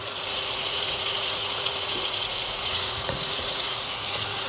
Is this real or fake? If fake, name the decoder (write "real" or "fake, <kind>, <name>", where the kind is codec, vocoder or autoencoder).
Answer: fake, vocoder, Vocos